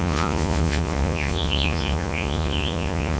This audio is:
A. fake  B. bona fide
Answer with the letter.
A